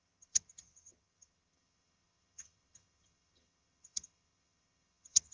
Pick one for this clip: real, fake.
fake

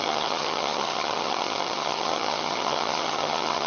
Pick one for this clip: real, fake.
fake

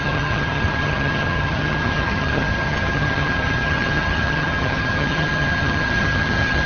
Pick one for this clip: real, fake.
fake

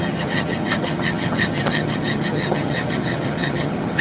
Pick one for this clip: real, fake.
fake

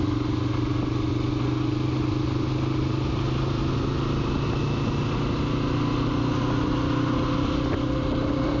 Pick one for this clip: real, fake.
real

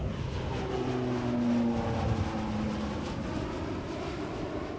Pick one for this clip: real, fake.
real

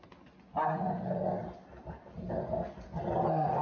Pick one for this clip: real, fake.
real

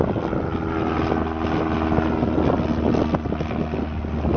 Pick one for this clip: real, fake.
real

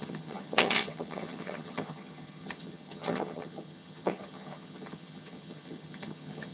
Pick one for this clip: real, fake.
fake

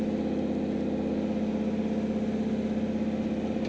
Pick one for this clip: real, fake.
real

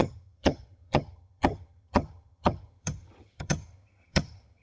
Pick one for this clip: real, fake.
fake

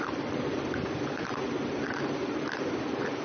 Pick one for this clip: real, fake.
real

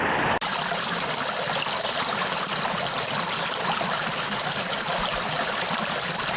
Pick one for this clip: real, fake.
real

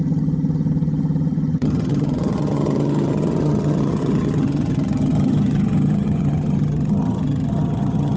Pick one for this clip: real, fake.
fake